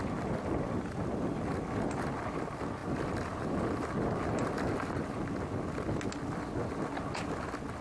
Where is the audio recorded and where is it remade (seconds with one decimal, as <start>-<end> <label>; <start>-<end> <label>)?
0.0-7.8 recorded